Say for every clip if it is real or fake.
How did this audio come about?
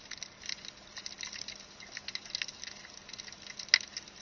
real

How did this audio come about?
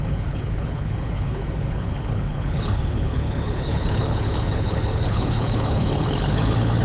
fake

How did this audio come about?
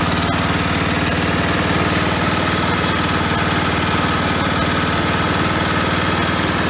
real